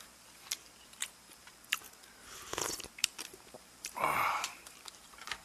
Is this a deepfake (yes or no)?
yes